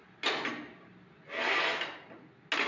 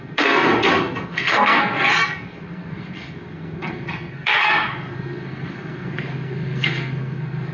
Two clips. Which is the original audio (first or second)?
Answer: first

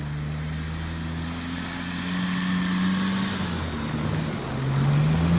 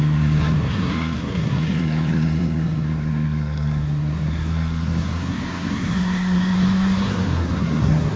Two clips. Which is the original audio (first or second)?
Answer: first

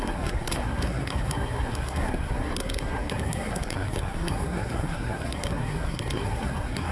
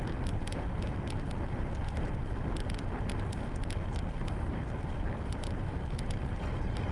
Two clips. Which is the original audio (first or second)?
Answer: second